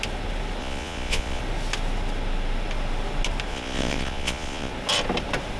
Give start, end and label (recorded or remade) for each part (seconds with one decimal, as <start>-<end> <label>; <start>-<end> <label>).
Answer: 0.0-0.6 recorded; 0.6-1.4 remade; 1.4-3.5 recorded; 3.5-4.7 remade; 4.7-5.6 recorded